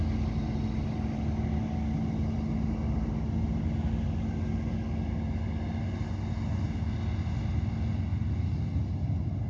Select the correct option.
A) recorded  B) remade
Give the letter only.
A